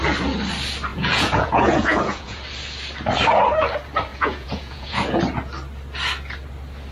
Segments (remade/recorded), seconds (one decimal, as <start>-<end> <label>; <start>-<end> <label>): 0.0-0.9 recorded; 0.9-2.4 remade; 2.4-4.1 recorded; 4.1-5.2 remade; 5.2-6.9 recorded